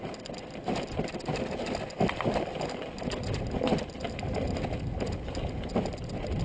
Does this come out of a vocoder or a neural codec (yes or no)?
no